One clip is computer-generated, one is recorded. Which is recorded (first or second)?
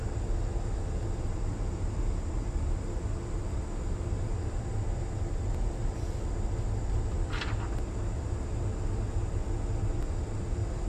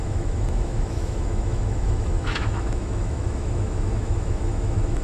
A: first